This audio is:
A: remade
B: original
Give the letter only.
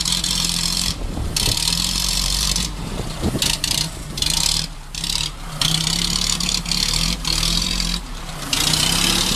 A